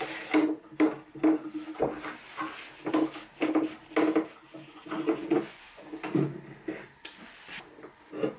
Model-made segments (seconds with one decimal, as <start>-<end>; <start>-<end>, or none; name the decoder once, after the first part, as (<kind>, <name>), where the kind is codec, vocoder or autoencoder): 4.6-6.0 (vocoder, Vocos)